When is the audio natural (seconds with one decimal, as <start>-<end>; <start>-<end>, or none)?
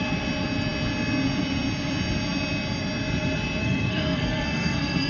0.0-3.6